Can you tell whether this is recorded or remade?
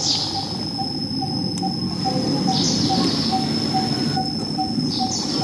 recorded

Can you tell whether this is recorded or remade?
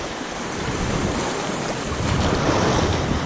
recorded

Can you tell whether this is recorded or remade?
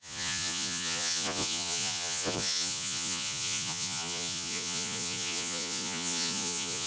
remade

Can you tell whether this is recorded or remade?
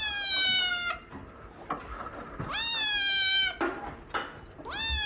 recorded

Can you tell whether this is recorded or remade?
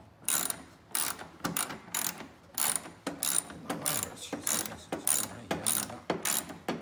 recorded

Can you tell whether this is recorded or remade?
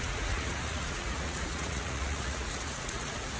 remade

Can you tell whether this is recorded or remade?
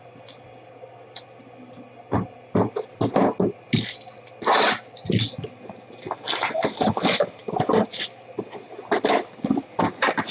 recorded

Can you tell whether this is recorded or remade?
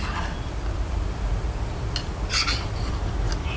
recorded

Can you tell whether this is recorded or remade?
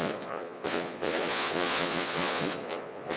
remade